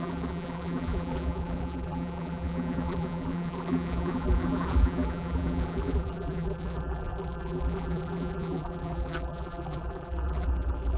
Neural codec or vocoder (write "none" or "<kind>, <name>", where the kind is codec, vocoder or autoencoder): vocoder, BigVGAN v2